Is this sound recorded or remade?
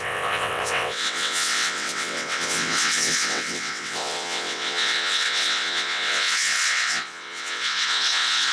remade